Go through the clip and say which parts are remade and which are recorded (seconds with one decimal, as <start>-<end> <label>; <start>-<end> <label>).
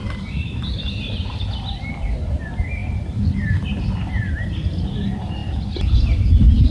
0.0-0.7 remade; 0.7-2.8 recorded; 2.8-3.4 remade; 3.4-5.4 recorded; 5.4-6.7 remade